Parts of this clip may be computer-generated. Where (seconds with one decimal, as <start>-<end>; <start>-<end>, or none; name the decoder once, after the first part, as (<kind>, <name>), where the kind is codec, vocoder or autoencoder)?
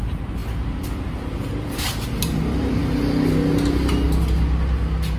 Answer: 0.0-2.8 (vocoder, BigVGAN v2)